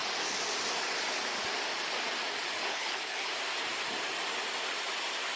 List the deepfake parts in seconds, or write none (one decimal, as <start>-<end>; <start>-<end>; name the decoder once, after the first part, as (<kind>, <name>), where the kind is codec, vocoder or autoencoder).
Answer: 2.6-3.3 (codec, HILCodec)